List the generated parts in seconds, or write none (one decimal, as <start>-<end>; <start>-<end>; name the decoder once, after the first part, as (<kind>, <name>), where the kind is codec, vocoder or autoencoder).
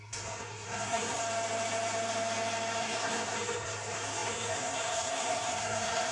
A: 0.0-1.2 (codec, SNAC); 2.8-6.1